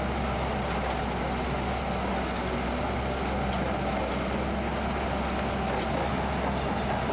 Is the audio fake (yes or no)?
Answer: no